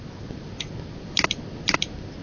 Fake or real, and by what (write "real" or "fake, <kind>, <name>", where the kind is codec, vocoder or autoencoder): real